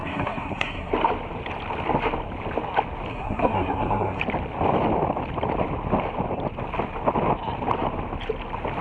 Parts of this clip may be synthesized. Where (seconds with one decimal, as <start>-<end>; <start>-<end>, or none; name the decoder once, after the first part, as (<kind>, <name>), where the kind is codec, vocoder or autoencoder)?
0.0-0.9 (codec, SNAC); 3.1-4.2